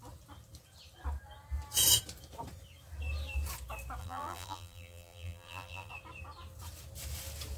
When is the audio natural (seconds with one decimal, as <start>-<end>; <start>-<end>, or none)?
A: 0.0-4.0; 5.9-7.6